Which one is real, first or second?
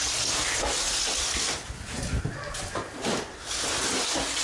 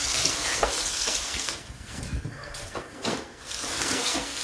first